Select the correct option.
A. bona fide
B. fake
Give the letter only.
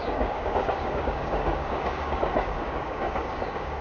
B